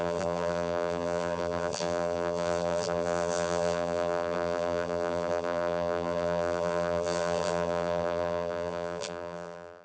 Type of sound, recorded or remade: remade